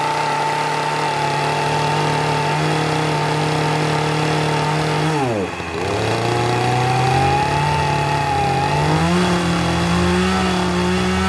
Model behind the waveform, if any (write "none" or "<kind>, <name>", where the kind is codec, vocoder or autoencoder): none